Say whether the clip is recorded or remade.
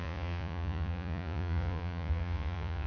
remade